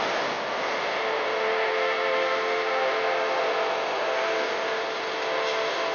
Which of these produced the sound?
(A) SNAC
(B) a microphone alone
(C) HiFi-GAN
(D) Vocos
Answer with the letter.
B